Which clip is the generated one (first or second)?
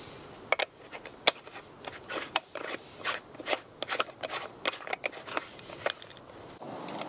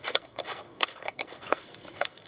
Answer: second